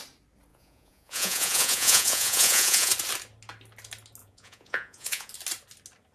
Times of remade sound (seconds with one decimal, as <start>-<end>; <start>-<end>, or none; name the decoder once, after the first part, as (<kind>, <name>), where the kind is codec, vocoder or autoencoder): 0.5-2.9 (vocoder, Vocos); 4.2-5.3